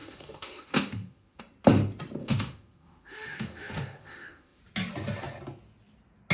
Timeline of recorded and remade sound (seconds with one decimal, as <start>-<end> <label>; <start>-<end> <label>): 0.0-1.4 remade; 1.4-2.2 recorded; 2.2-4.6 remade; 4.6-6.3 recorded

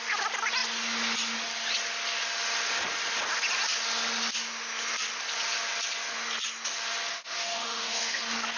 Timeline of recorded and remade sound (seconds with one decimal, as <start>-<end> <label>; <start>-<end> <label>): 0.0-7.1 recorded; 7.1-8.2 remade; 8.2-8.6 recorded